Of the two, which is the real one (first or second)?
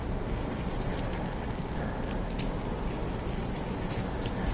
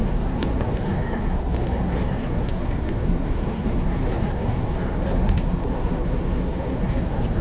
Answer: first